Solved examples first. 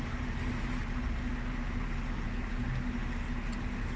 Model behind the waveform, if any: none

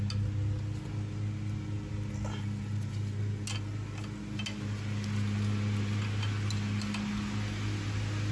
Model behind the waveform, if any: none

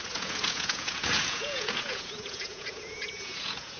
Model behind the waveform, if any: vocoder, Vocos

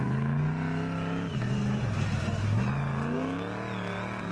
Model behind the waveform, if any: none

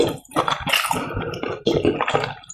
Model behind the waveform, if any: none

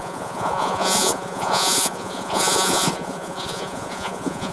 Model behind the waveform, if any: vocoder, Vocos